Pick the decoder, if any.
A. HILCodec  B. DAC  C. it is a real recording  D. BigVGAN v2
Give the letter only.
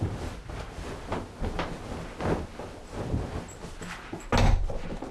C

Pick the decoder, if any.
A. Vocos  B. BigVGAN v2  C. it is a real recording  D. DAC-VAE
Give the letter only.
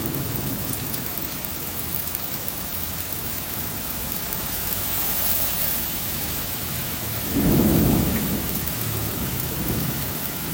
D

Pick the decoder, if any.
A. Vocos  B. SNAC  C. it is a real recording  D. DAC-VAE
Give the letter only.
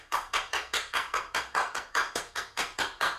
B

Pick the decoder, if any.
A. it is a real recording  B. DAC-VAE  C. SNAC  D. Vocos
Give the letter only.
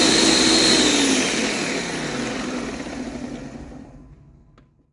A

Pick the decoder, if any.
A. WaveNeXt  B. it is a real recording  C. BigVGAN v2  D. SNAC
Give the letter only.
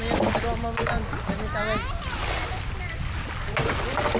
B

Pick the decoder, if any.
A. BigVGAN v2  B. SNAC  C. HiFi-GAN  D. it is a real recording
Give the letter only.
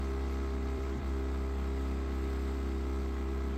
A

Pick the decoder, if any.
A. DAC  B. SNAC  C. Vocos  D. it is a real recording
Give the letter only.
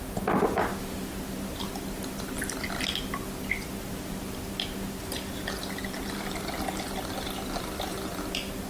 D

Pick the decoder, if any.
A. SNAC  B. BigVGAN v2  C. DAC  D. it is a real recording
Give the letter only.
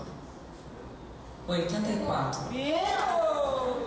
D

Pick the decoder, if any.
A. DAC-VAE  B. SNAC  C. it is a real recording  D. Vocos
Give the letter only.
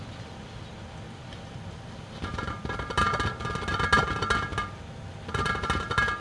C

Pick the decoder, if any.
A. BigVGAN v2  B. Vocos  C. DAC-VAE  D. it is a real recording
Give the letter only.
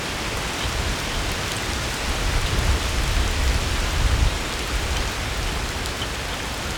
D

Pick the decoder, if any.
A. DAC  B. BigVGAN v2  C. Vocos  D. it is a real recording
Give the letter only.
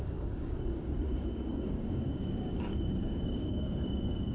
A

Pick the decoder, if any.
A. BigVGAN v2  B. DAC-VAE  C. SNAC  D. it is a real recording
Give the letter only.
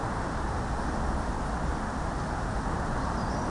D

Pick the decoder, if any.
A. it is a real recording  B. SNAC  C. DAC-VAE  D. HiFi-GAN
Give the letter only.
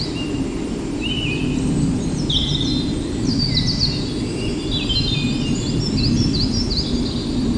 A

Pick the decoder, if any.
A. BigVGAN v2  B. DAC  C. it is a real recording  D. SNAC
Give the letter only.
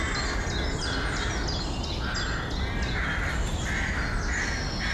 C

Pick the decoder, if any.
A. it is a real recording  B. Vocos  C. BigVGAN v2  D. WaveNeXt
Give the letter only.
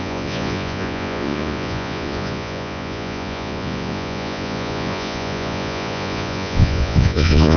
B